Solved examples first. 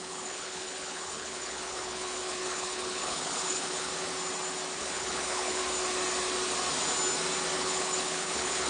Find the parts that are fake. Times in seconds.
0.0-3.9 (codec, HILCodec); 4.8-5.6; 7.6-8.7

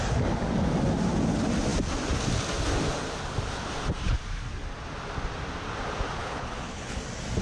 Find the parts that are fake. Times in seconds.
6.2-7.0 (codec, HILCodec)